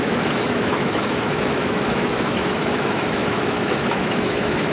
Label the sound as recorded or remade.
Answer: remade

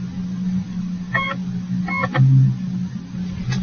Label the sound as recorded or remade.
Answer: recorded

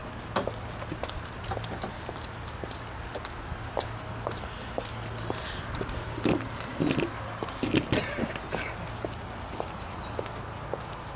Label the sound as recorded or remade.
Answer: recorded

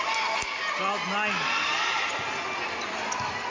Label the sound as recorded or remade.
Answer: recorded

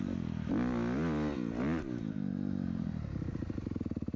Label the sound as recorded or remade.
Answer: recorded